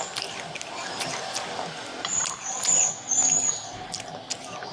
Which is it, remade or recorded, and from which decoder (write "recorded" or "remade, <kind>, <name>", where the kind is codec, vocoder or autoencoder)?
recorded